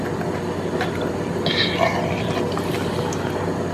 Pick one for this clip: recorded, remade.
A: recorded